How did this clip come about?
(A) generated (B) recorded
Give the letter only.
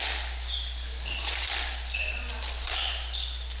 B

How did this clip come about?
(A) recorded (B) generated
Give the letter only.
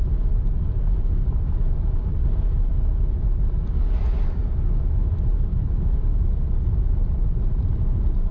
A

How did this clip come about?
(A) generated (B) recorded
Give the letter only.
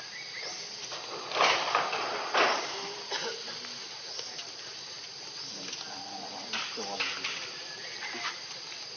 B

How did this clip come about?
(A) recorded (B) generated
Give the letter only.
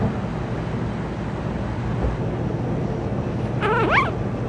A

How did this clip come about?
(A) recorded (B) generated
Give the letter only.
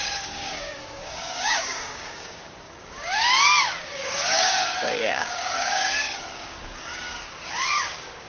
B